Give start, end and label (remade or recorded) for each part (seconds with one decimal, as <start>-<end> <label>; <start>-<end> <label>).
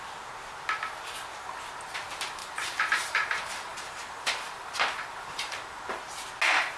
0.0-2.4 recorded; 2.4-6.0 remade; 6.0-6.8 recorded